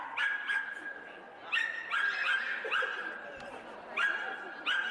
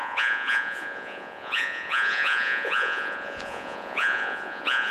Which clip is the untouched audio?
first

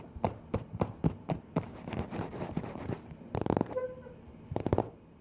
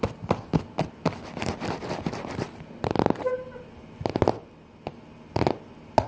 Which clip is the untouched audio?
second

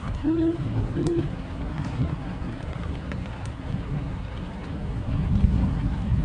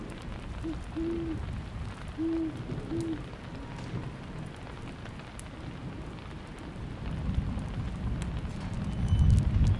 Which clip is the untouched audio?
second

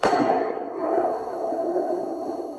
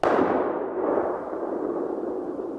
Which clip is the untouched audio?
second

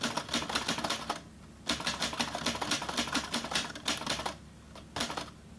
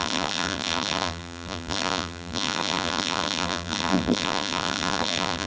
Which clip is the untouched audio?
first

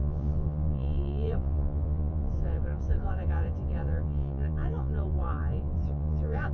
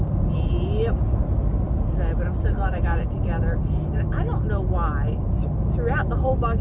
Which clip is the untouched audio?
second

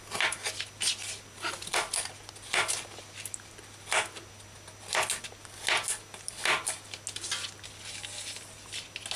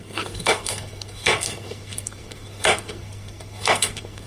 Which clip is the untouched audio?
first